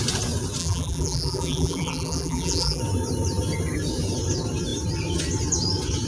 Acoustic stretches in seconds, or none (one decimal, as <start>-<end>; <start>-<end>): 0.0-0.6; 2.8-6.1

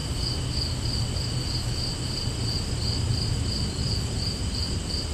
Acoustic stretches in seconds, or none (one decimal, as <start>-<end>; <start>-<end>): 0.0-3.1